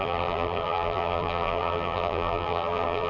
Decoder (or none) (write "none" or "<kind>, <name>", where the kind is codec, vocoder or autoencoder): vocoder, BigVGAN v2